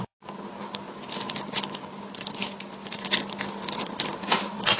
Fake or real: real